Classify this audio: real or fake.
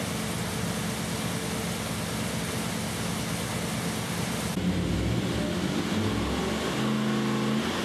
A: real